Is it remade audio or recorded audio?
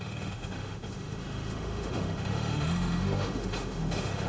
remade